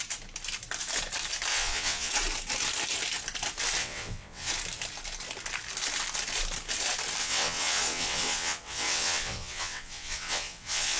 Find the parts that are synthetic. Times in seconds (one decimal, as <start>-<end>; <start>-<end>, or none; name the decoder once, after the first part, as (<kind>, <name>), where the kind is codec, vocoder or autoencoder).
1.5-2.1 (vocoder, WaveNeXt); 3.8-4.5; 7.2-11.0